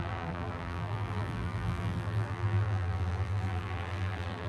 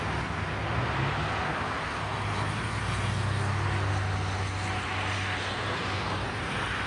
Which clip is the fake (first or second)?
first